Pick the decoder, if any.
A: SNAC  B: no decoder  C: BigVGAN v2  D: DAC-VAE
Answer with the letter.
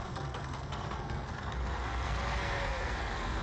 A